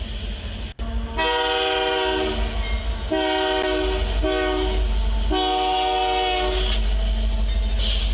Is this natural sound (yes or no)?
yes